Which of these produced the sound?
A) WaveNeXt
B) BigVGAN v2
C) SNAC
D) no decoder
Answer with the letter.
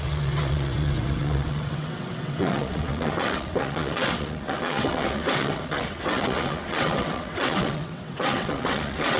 A